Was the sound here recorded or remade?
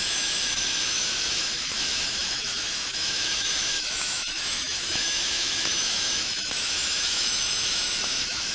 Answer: remade